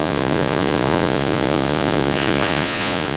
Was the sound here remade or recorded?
remade